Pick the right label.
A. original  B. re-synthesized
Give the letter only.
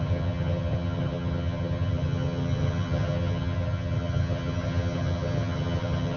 B